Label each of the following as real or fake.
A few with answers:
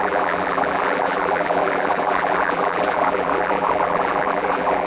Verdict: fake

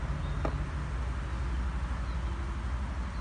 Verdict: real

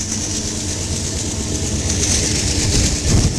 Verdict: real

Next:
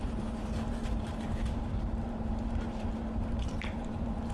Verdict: fake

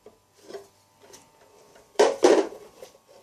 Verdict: fake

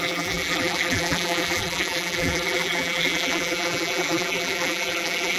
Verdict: fake